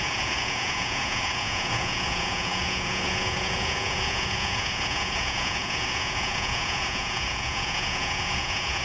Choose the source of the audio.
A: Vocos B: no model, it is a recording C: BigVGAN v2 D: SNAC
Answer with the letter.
A